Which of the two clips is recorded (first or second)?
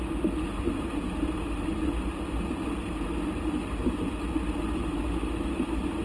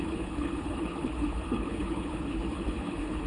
first